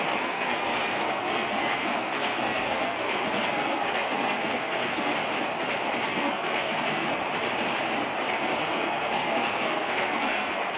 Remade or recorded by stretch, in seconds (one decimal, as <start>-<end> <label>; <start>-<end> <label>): 0.0-5.1 remade; 5.1-6.1 recorded; 6.1-7.2 remade; 7.2-8.3 recorded; 8.3-10.8 remade